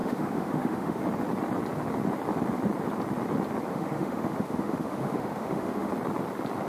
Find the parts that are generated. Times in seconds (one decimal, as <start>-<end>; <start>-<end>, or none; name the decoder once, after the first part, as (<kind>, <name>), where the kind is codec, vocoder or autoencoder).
0.0-1.0 (autoencoder, DAC-VAE); 3.7-5.9